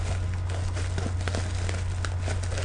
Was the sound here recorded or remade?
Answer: recorded